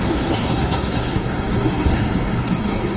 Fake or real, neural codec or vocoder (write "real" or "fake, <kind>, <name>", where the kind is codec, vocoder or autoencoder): fake, codec, SNAC